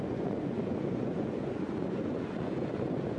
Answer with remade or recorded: remade